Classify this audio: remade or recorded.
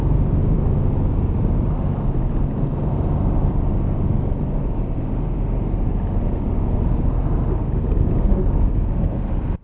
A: recorded